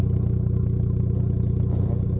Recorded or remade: recorded